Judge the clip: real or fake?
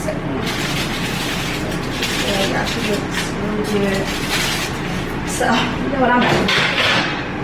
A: real